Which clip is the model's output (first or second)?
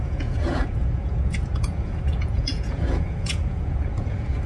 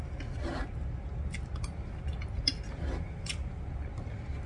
first